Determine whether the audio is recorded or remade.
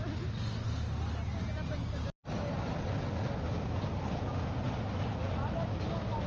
recorded